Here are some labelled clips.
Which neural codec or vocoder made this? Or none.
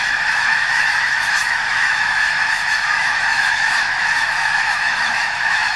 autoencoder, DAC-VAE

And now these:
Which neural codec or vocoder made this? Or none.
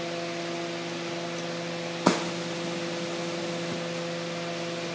none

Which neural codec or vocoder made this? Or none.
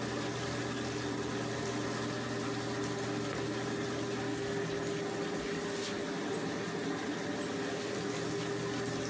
none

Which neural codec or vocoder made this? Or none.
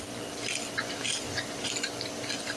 none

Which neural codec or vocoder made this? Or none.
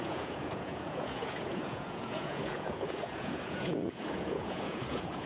vocoder, Vocos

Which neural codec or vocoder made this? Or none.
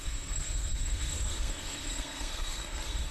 codec, SNAC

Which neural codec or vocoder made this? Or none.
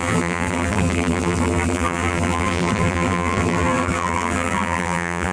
vocoder, BigVGAN v2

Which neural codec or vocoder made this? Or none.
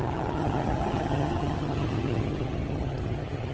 vocoder, HiFi-GAN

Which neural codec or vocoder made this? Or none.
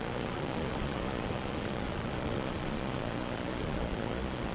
vocoder, Vocos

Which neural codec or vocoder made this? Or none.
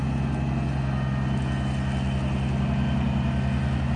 none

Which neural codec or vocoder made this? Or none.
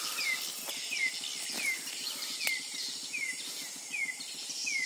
none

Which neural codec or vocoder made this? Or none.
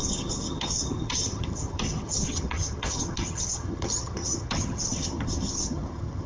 vocoder, HiFi-GAN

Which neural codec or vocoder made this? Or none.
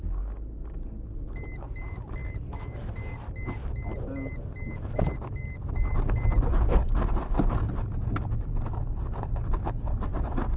none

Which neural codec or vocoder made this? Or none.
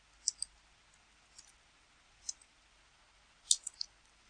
none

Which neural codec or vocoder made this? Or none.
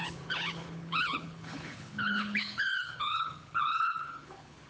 codec, HILCodec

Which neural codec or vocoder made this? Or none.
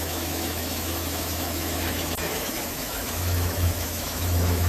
autoencoder, DAC-VAE